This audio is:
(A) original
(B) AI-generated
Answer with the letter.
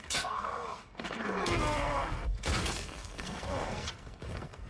B